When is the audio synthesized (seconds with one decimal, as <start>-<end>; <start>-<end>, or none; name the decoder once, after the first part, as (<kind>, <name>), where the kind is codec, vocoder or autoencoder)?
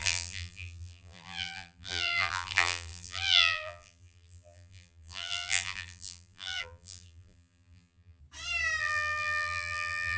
0.0-8.2 (vocoder, BigVGAN v2); 8.8-10.2